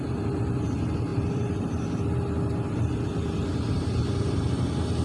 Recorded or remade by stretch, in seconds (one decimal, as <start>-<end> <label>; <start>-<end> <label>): 0.0-1.1 recorded; 1.1-1.7 remade; 1.7-3.4 recorded; 3.4-4.4 remade; 4.4-5.0 recorded